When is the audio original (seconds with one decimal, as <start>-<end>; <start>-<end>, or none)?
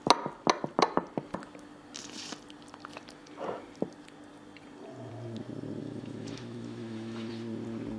0.0-5.8; 7.3-8.0